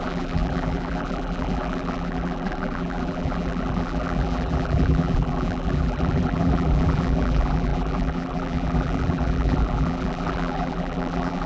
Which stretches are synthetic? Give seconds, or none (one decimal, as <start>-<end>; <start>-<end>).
0.0-11.5